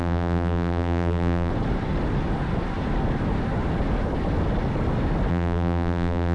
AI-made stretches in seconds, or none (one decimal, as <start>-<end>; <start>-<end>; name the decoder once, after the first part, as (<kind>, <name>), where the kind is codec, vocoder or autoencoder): 0.0-1.5 (vocoder, BigVGAN v2); 5.3-6.3

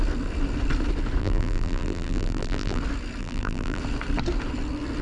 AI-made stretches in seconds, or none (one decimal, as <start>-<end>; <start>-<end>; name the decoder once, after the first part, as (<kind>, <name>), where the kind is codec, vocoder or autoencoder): 1.2-2.8 (vocoder, BigVGAN v2); 3.2-3.8

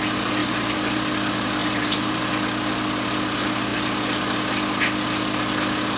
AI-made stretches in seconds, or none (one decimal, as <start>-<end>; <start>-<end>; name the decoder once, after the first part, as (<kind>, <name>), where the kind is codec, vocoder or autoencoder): 0.4-1.1 (vocoder, BigVGAN v2); 1.6-2.2

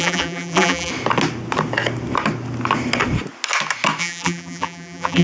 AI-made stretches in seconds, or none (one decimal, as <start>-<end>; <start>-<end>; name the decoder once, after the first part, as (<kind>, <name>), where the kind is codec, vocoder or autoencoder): 0.0-0.9 (vocoder, BigVGAN v2); 4.0-5.2

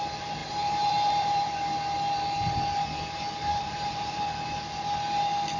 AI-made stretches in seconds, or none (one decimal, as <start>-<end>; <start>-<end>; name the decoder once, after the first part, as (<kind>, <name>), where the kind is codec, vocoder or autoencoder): 0.4-1.5 (vocoder, BigVGAN v2); 3.5-4.2

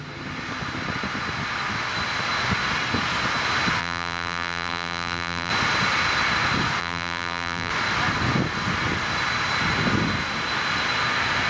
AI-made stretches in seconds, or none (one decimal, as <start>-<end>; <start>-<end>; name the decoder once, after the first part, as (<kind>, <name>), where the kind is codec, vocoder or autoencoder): 3.8-5.5 (vocoder, BigVGAN v2); 6.8-7.7

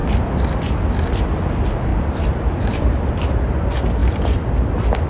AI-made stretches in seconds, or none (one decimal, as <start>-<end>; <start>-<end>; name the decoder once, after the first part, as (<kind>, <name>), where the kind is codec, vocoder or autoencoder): 1.9-3.1 (vocoder, BigVGAN v2); 4.0-4.5